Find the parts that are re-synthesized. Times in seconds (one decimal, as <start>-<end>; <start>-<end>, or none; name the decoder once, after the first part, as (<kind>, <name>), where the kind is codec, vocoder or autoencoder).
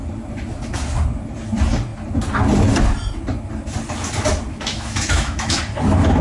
4.5-5.6 (autoencoder, DAC-VAE)